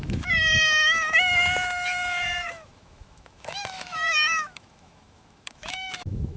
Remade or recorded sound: remade